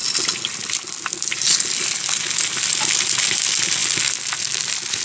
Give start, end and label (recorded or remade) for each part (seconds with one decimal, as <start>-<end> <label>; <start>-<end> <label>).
0.0-5.0 recorded